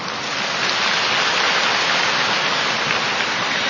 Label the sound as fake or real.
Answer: real